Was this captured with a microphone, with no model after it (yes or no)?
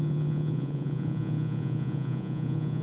no